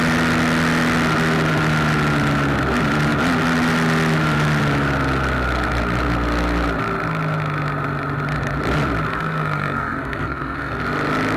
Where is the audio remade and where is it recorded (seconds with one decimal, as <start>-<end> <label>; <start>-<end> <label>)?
0.0-9.1 recorded; 9.1-10.8 remade; 10.8-11.4 recorded